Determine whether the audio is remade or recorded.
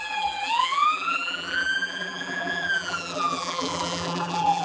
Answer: remade